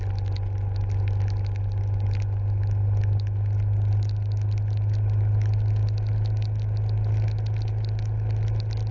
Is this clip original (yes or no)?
yes